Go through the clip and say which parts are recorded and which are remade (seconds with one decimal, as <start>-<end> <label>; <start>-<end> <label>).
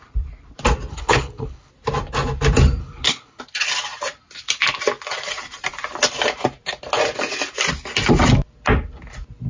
0.0-0.9 recorded; 0.9-1.7 remade; 1.7-2.8 recorded; 2.8-3.4 remade; 3.4-9.5 recorded